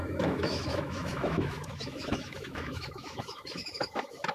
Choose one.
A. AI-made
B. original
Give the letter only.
A